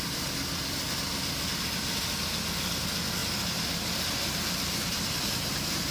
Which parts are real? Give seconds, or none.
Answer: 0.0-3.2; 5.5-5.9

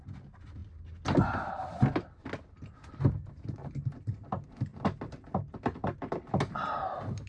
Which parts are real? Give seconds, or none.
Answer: 0.0-7.3

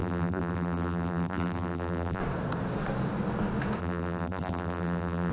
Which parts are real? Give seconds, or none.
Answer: 2.2-3.8

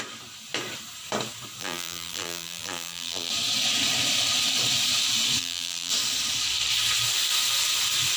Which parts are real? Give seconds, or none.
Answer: 0.0-1.6; 3.3-5.4; 5.9-8.2

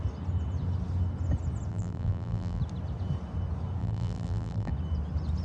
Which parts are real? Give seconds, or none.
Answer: 0.0-1.7; 2.6-3.8; 4.7-5.4

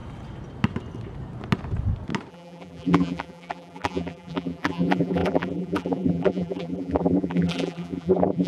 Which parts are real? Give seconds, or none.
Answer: 0.0-2.3